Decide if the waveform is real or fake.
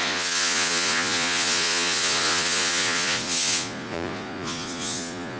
fake